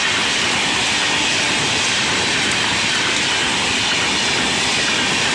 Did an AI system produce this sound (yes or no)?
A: no